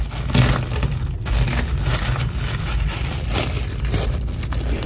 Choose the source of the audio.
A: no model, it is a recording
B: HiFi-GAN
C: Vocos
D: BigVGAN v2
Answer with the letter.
A